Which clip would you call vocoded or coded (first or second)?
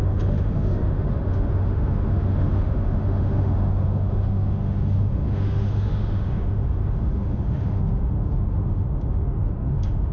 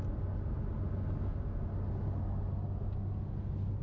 first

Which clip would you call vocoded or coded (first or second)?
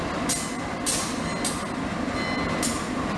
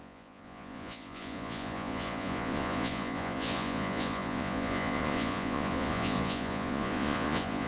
second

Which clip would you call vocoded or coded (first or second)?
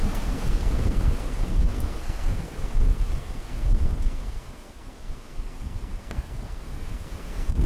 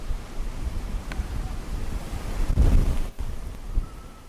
first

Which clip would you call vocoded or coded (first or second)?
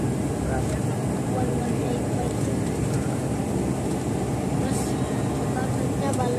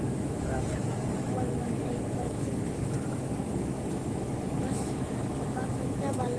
second